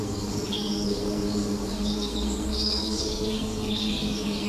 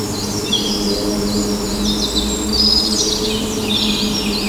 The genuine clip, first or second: second